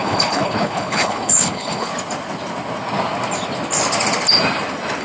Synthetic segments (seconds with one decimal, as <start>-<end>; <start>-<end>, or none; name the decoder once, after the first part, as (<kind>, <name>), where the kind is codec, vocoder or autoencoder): 0.0-1.9 (codec, HILCodec)